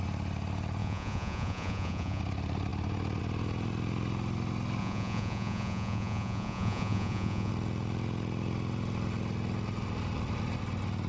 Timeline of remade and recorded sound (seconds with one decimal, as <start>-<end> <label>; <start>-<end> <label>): 0.0-0.8 recorded; 0.8-2.2 remade; 2.2-4.8 recorded; 4.8-7.5 remade; 7.5-11.1 recorded